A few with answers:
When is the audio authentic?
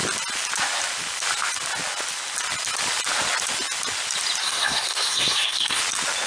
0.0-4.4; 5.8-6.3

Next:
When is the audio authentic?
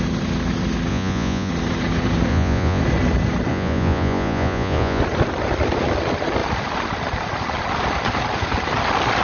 0.0-0.9; 1.5-2.3; 2.8-3.5; 5.0-9.2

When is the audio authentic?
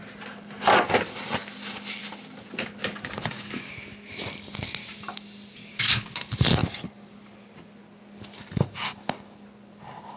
0.0-2.8; 3.7-5.5; 6.1-10.2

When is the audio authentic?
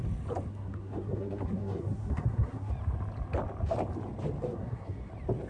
0.0-0.5; 2.7-4.4; 5.1-5.5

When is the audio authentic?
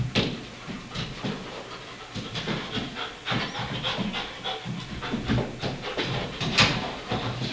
0.0-7.5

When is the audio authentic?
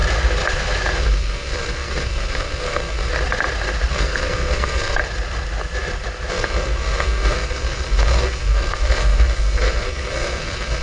0.0-1.0; 3.1-3.9; 5.0-6.3